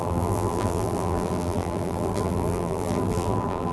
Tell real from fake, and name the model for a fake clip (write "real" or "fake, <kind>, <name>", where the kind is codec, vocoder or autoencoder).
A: fake, vocoder, BigVGAN v2